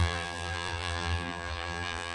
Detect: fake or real fake